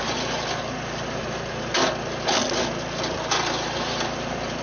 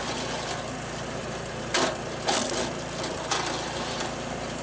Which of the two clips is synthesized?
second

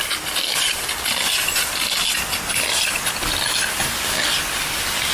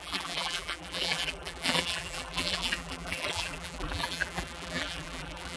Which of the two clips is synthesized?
second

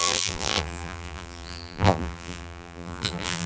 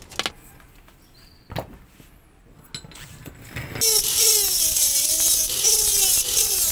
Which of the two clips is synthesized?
first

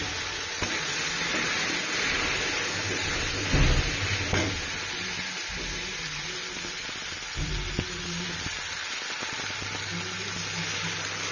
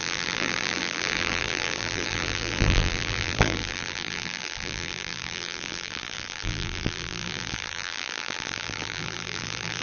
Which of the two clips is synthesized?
second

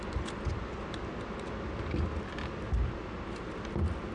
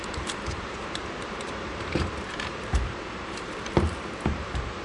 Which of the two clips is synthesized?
second